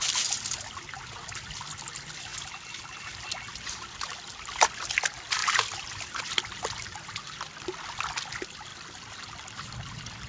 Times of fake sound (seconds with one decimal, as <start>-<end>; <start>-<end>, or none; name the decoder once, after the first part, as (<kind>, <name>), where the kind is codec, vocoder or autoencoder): none